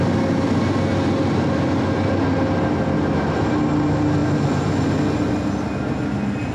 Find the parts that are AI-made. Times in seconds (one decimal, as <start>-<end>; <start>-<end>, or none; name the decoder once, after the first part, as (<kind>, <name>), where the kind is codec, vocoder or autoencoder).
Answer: none